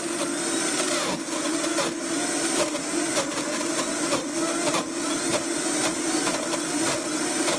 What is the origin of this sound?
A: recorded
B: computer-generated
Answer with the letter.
A